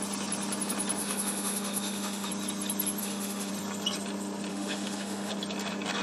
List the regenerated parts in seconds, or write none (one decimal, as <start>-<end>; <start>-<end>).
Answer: 1.0-2.3; 3.0-3.5; 4.5-5.3